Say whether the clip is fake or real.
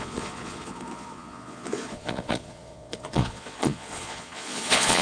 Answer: fake